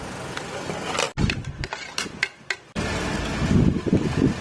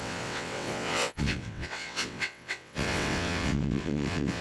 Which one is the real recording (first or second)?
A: first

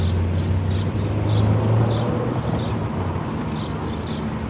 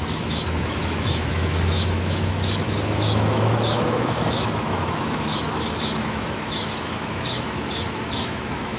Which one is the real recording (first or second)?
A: first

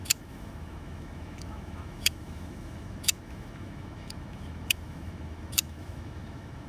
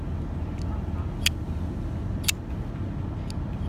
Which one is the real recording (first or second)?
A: second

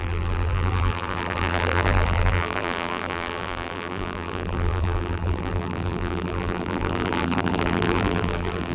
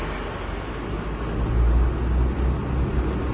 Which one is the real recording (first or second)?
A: second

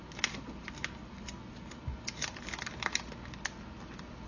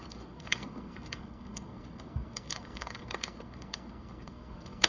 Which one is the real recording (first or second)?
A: first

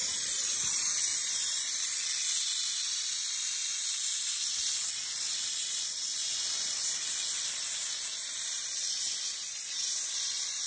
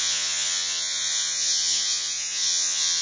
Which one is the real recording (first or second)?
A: first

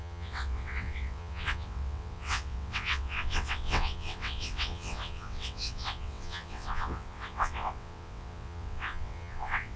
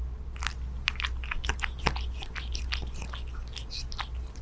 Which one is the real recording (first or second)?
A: second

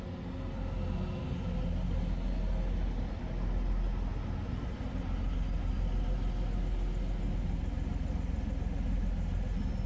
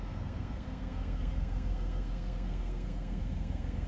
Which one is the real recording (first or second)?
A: first